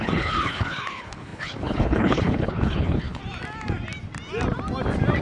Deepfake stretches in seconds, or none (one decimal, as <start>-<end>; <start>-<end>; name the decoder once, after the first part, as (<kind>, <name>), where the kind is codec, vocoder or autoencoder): 0.0-3.2 (codec, HILCodec)